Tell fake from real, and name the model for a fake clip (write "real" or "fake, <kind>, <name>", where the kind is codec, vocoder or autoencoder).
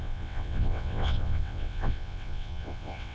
fake, vocoder, WaveNeXt